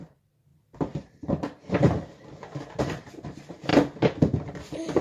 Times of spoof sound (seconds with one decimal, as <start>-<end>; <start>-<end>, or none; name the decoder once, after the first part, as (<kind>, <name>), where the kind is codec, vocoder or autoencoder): 0.0-0.5 (vocoder, BigVGAN v2); 2.8-3.7